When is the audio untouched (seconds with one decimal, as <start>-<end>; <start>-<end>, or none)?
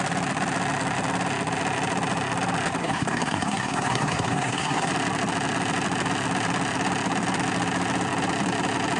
0.0-2.8; 4.9-9.0